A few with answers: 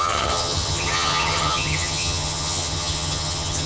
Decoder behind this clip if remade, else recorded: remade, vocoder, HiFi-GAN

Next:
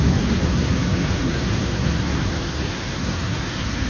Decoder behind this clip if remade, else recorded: remade, codec, SNAC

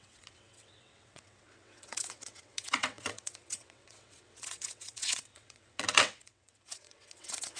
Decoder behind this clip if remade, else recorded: remade, vocoder, WaveNeXt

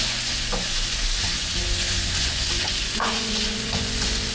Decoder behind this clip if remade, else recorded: remade, vocoder, Vocos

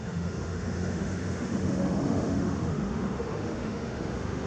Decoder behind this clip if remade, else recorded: remade, autoencoder, DAC-VAE